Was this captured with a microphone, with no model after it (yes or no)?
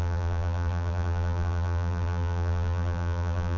no